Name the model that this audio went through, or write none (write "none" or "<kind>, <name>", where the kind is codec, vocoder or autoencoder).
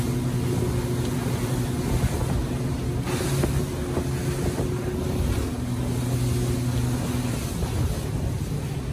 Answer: none